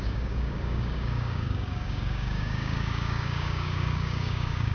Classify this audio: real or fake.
fake